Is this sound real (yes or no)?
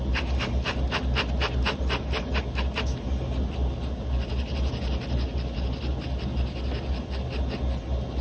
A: yes